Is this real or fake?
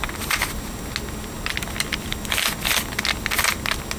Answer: real